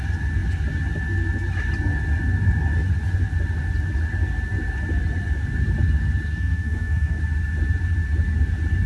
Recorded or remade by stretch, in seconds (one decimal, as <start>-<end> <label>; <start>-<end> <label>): 0.0-6.3 recorded; 6.3-7.2 remade; 7.2-8.9 recorded